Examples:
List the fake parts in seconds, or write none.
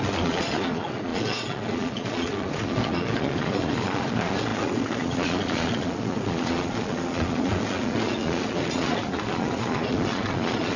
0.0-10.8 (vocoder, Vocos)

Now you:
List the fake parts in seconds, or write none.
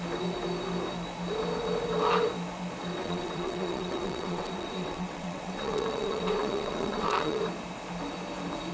3.0-7.4 (vocoder, WaveNeXt)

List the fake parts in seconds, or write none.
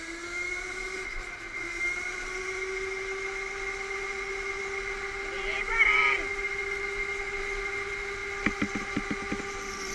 none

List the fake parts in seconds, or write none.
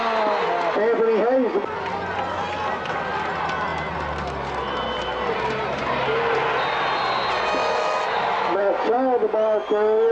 7.6-8.6 (autoencoder, DAC-VAE)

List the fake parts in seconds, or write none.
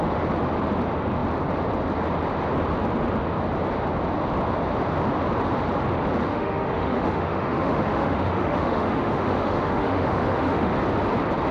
6.2-10.7 (autoencoder, DAC-VAE)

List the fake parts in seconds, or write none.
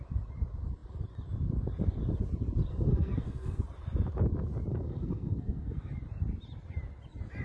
2.7-3.6 (codec, SNAC); 4.7-5.8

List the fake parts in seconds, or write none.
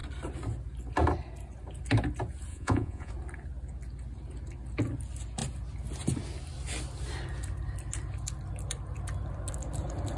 2.5-3.1 (vocoder, Vocos)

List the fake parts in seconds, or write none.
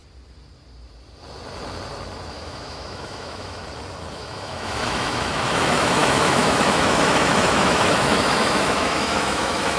2.3-3.6 (autoencoder, DAC-VAE); 4.1-9.8